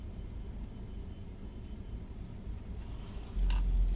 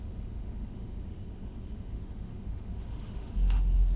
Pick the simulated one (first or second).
second